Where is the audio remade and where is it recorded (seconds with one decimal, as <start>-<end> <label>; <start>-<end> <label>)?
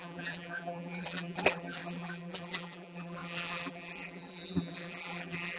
0.0-5.6 remade